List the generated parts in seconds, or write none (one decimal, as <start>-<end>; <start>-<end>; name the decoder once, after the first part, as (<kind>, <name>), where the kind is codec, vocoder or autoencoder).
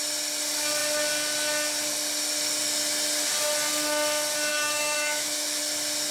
4.5-5.6 (autoencoder, DAC-VAE)